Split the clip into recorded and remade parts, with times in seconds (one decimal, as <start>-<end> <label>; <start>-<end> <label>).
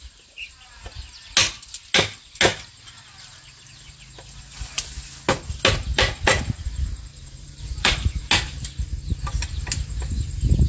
0.0-5.9 recorded; 5.9-8.2 remade; 8.2-10.7 recorded